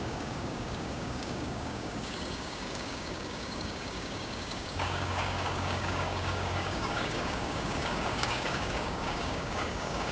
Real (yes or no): no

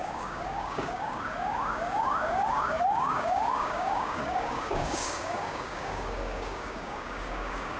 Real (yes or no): no